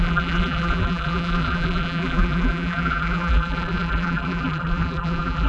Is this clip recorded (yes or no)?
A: no